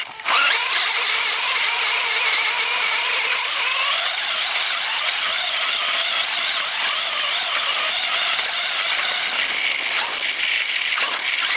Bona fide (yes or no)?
yes